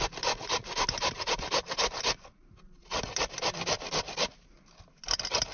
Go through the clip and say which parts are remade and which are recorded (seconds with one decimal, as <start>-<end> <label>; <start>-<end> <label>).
0.0-5.5 recorded